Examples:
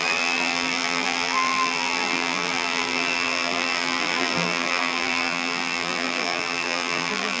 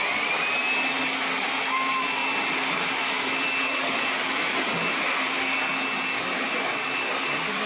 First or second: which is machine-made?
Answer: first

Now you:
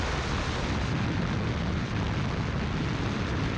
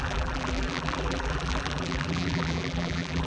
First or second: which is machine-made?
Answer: second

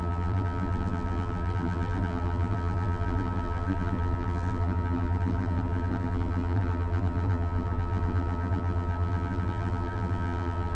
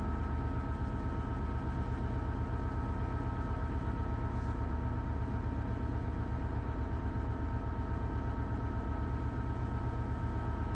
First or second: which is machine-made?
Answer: first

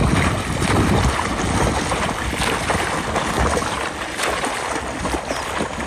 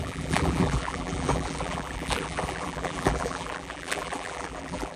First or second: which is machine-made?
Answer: second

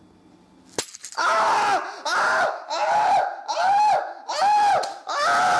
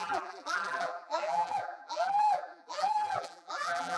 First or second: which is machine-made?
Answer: second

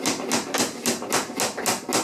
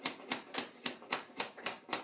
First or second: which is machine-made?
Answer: second